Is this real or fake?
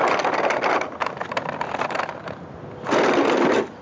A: fake